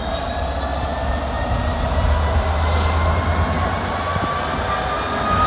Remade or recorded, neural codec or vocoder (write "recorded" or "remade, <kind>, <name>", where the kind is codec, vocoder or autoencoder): recorded